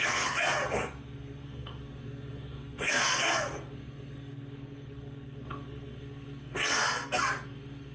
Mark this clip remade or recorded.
remade